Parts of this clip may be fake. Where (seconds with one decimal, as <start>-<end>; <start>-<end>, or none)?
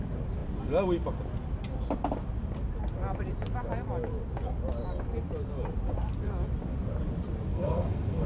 7.5-8.3